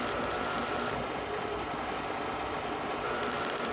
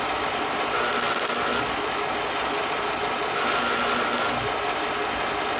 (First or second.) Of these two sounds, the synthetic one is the first